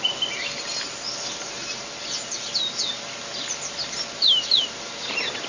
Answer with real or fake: real